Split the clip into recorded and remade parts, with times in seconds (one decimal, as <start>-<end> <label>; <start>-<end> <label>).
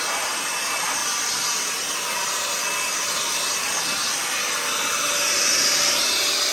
0.0-6.5 recorded